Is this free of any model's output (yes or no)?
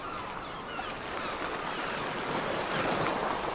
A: yes